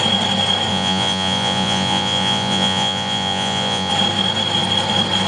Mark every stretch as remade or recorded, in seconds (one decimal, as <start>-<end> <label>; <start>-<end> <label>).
0.0-0.7 recorded; 0.7-3.9 remade; 3.9-5.3 recorded